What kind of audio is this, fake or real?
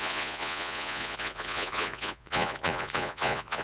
fake